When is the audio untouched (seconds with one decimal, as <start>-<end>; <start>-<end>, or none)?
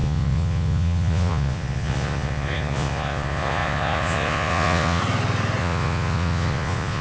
5.0-5.6